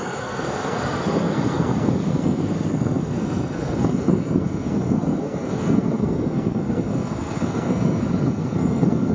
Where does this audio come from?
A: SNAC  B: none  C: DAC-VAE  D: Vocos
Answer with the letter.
A